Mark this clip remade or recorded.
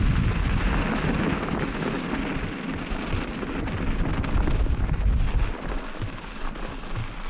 recorded